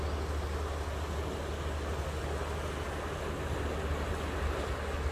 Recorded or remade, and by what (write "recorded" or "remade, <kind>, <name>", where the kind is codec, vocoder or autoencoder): recorded